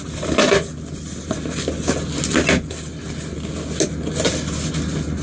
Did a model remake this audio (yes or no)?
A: no